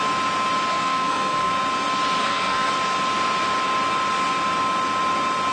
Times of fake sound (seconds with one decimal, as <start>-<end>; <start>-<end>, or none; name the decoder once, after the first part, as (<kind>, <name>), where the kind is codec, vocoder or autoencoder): 0.7-1.5 (codec, SNAC); 2.2-2.7